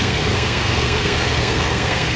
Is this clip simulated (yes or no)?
yes